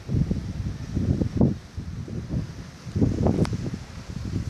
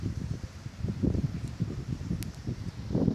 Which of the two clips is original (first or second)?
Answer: first